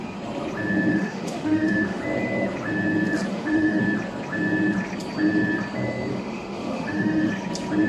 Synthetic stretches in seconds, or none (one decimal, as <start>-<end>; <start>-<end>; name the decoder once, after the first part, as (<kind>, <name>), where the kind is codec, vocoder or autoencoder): 0.9-2.0 (autoencoder, DAC-VAE); 3.3-3.8; 6.1-7.3